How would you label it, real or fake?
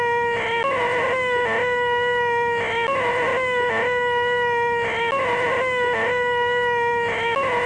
real